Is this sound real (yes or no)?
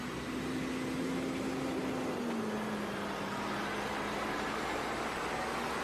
yes